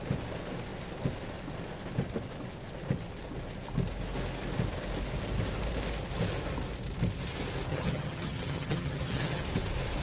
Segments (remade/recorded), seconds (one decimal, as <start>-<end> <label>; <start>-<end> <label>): 0.0-7.7 recorded; 7.7-9.4 remade; 9.4-10.0 recorded